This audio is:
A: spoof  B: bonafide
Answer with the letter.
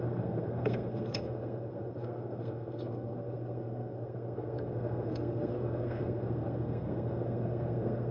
A